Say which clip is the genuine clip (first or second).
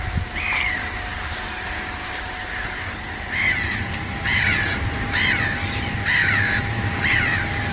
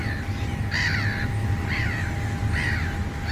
second